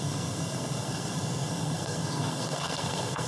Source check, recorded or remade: remade